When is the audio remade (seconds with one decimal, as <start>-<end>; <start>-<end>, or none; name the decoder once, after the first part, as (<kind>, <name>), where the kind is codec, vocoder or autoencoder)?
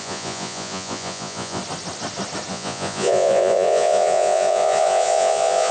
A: 0.0-1.6 (vocoder, Vocos); 2.5-5.7